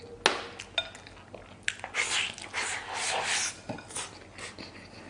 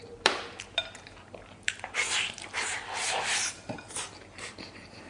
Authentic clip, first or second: first